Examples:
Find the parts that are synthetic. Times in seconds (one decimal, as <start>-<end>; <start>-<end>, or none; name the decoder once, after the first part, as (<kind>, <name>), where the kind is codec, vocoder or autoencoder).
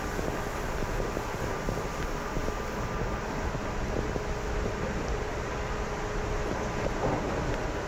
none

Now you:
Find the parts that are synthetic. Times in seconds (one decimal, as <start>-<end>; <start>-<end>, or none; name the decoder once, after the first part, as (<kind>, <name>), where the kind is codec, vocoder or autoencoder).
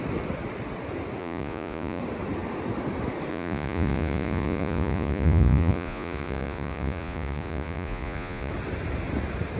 1.2-2.0 (vocoder, Vocos); 3.3-8.5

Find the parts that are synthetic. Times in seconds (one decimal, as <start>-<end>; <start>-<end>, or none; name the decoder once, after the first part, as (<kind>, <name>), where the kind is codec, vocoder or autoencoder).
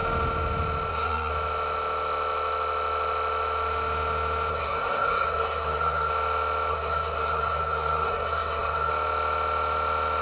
0.9-1.3 (codec, SNAC); 4.5-6.1; 6.7-8.9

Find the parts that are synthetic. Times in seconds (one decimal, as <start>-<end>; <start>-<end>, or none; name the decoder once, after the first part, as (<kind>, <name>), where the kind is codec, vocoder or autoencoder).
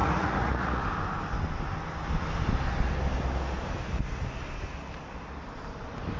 0.0-0.8 (vocoder, Vocos)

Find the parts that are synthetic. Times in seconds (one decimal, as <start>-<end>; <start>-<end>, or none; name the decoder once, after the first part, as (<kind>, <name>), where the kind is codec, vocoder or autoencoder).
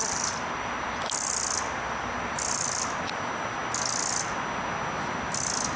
0.0-3.1 (vocoder, BigVGAN v2)